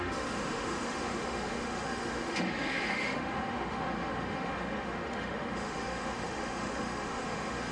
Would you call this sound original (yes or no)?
no